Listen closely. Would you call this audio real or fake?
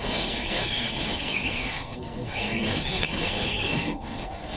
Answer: fake